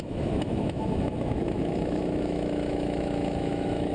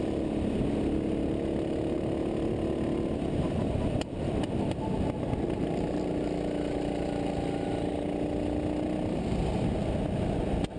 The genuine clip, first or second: second